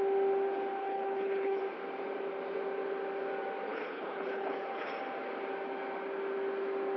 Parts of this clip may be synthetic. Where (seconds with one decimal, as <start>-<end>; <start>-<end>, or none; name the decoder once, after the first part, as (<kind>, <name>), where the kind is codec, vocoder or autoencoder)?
0.8-1.6 (codec, HILCodec); 3.7-4.9